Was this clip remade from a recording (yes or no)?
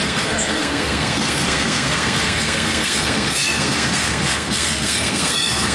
yes